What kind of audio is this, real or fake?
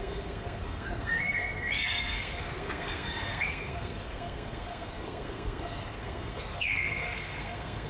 fake